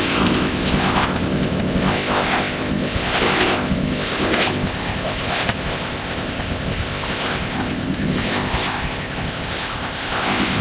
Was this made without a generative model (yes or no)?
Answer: no